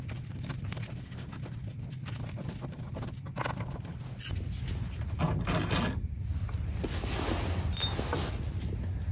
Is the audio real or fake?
real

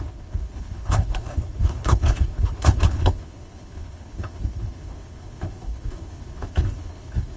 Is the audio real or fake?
fake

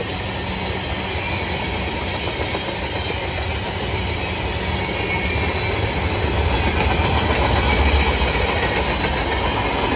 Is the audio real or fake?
real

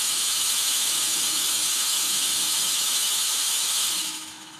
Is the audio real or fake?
fake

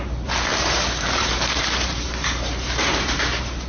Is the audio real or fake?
fake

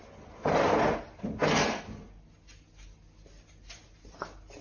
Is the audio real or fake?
real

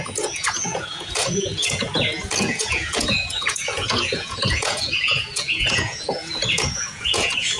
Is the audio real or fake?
fake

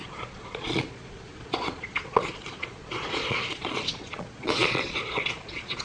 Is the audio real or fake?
fake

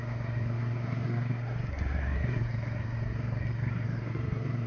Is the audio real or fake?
fake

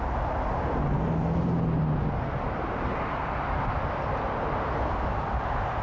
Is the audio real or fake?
real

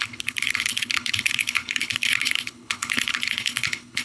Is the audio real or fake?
fake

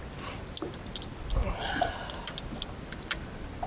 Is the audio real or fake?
real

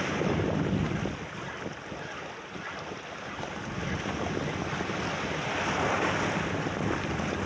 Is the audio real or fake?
real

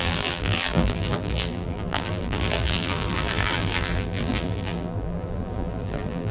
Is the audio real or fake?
fake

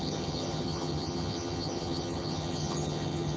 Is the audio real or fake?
fake